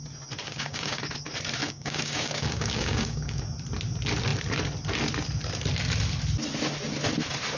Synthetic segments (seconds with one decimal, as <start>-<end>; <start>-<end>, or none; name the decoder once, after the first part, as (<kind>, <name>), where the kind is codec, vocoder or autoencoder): 0.4-1.0 (codec, DAC); 1.6-3.4